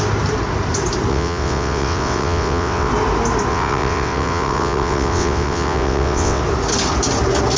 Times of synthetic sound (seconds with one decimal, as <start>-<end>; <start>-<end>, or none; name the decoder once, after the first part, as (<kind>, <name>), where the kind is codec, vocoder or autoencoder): 1.1-2.9 (vocoder, WaveNeXt); 3.5-6.4